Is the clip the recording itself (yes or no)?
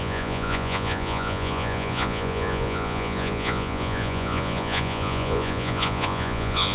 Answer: no